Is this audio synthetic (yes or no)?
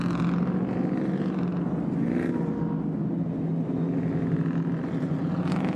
no